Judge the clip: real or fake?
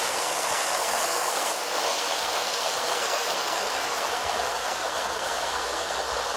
fake